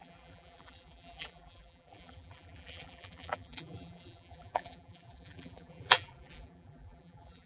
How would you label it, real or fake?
fake